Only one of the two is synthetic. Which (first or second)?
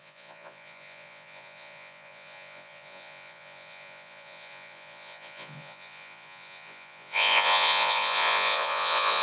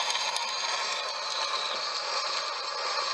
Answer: first